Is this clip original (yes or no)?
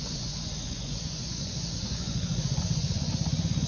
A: no